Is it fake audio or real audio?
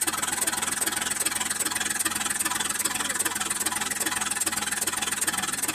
real